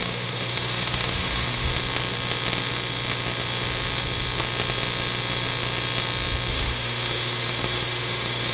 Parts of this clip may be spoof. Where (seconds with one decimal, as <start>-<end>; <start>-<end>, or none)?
0.0-1.7; 6.5-8.5